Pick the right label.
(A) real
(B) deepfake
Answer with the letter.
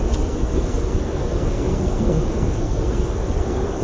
B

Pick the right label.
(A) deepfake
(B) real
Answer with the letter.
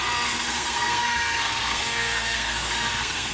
A